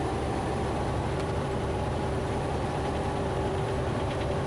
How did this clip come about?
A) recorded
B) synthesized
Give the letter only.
B